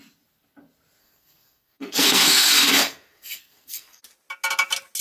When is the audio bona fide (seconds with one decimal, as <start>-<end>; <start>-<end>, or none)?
0.0-1.0; 4.0-5.0